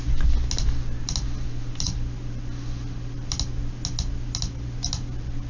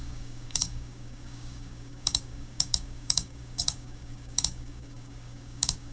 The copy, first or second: second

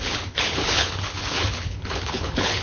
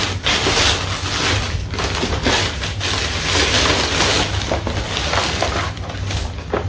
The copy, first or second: first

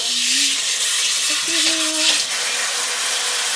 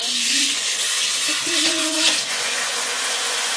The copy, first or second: second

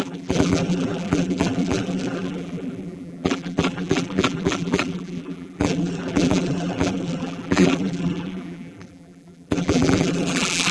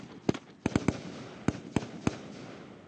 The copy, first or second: first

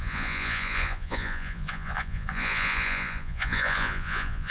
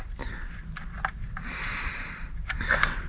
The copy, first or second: first